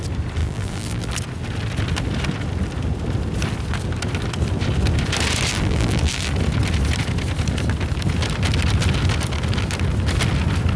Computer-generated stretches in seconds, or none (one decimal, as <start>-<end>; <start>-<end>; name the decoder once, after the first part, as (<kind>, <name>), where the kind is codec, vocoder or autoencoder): 0.4-1.1 (vocoder, BigVGAN v2); 5.5-6.3